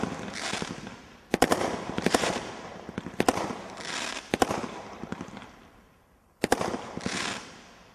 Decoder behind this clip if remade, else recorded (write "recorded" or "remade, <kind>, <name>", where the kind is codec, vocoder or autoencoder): remade, vocoder, BigVGAN v2